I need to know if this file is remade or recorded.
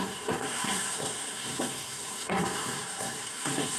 remade